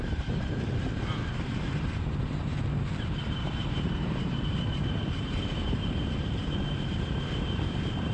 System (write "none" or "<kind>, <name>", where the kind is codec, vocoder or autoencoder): vocoder, BigVGAN v2